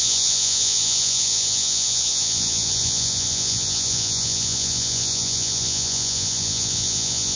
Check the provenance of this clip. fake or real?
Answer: fake